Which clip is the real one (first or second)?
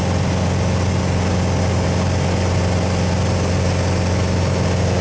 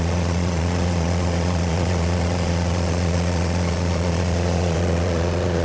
first